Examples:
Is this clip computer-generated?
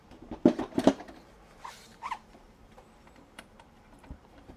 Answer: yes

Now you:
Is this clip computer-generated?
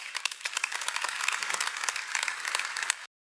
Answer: yes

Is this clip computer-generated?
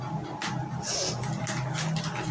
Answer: no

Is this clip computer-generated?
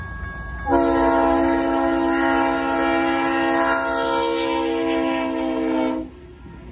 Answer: no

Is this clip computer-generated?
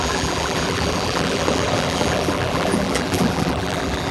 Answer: yes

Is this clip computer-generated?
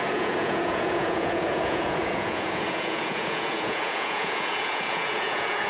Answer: yes